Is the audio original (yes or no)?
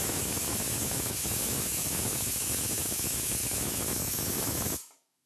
no